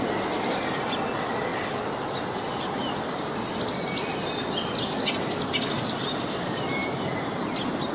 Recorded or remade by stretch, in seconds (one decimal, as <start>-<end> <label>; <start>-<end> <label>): 0.0-7.9 recorded